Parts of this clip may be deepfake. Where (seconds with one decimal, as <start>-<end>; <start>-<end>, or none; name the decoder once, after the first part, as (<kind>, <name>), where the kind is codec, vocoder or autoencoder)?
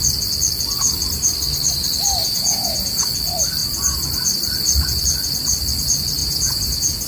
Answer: 2.2-3.0 (vocoder, Vocos); 6.2-7.1